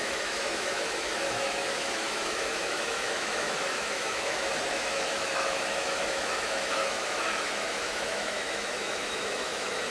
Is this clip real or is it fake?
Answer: fake